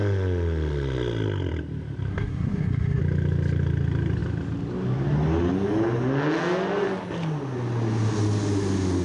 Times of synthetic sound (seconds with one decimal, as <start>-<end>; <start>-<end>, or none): 2.1-3.0